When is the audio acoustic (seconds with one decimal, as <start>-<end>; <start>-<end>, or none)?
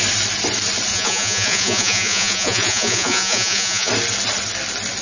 0.0-0.9; 3.9-5.0